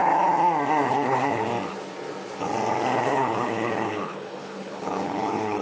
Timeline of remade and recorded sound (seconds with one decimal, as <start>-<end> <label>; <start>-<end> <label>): 0.0-0.9 recorded; 0.9-1.5 remade; 1.5-3.0 recorded; 3.0-5.6 remade